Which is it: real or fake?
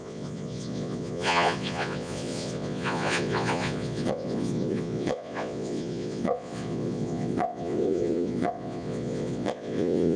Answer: fake